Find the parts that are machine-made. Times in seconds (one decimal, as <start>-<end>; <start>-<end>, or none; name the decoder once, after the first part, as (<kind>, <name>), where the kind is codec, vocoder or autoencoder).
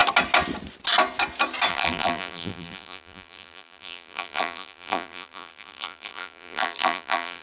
1.7-7.4 (vocoder, BigVGAN v2)